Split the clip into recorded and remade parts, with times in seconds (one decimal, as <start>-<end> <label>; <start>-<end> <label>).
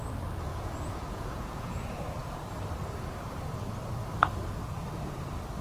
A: 0.0-0.5 recorded; 0.5-1.8 remade; 1.8-5.6 recorded